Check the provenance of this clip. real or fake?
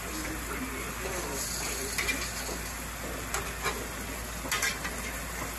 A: real